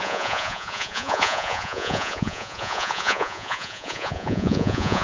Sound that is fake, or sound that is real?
fake